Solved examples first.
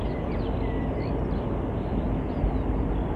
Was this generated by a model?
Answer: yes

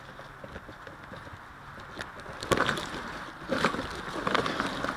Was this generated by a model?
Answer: no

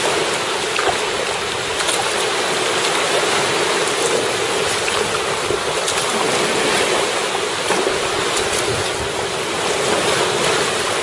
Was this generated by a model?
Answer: no